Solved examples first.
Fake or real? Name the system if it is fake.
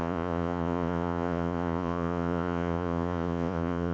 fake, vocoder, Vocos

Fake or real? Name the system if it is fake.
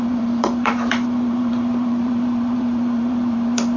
fake, vocoder, BigVGAN v2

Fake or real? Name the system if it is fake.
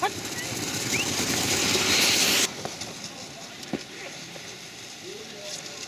real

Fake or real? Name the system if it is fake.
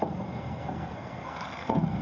fake, codec, SNAC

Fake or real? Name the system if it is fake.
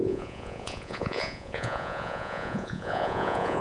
fake, vocoder, Vocos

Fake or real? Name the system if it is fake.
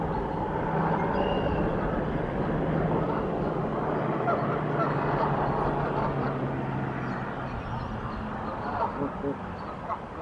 real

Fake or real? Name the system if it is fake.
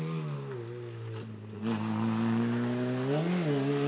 real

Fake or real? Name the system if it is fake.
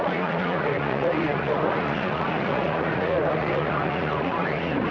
fake, vocoder, Vocos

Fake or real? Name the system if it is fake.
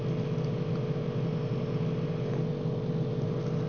real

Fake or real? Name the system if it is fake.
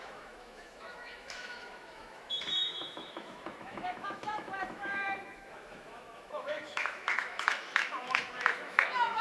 fake, autoencoder, DAC-VAE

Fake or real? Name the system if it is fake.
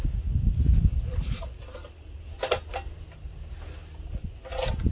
real